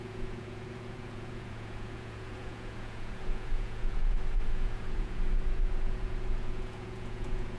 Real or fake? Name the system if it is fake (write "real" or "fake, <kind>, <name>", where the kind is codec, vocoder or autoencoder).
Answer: fake, vocoder, Vocos